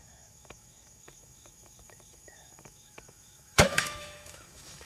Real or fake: fake